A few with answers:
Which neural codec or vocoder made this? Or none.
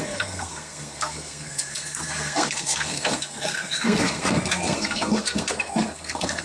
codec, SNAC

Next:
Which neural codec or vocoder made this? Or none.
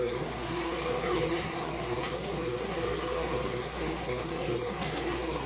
codec, SNAC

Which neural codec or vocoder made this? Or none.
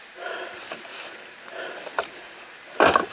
none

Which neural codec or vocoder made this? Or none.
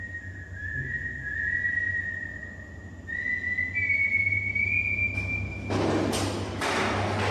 none